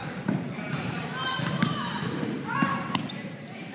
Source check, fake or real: fake